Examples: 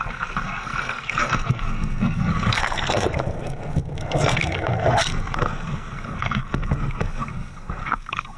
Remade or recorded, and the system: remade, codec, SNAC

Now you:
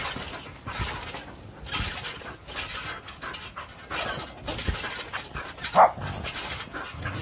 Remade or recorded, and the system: recorded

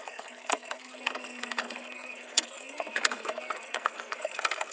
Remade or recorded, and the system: remade, codec, SNAC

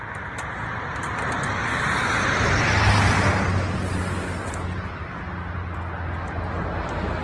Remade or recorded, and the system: recorded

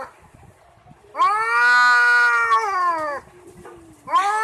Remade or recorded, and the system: recorded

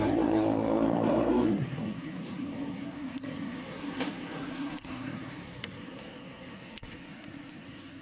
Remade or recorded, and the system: remade, codec, SNAC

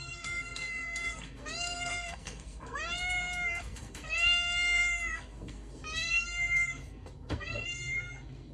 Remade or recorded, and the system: remade, codec, SNAC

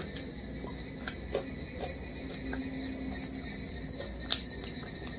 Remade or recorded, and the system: recorded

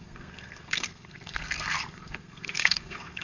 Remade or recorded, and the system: remade, codec, SNAC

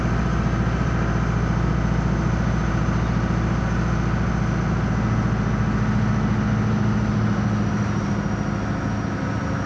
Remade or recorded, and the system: recorded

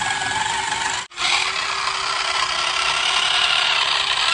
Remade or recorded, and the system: recorded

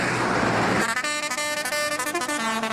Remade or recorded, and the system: recorded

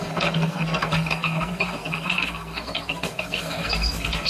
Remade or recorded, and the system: remade, codec, SNAC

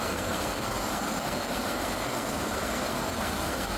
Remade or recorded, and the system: remade, codec, SNAC